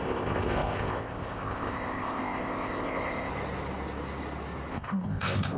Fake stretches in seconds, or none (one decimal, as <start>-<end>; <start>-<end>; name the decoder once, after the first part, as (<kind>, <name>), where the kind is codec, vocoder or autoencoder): 0.0-3.3 (codec, ZipCodec); 4.7-5.6